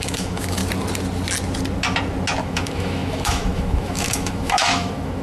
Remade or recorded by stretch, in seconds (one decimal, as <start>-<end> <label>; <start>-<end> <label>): 0.0-0.6 remade; 0.6-2.4 recorded; 2.4-5.2 remade